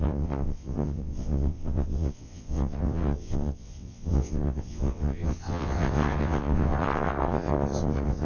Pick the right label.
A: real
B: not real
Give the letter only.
B